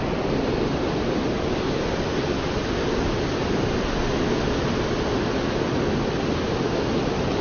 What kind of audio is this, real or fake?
real